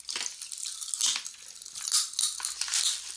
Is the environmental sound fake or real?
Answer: real